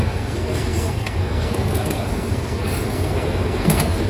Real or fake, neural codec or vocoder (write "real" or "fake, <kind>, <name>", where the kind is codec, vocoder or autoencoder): fake, codec, SNAC